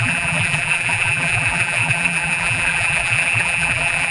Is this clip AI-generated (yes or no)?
yes